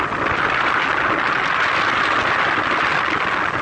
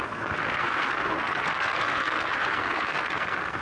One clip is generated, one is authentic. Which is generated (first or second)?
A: second